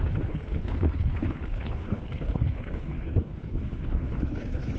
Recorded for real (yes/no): no